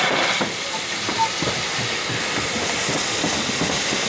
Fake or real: real